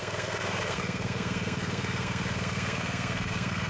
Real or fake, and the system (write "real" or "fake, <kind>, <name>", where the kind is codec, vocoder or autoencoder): fake, codec, SNAC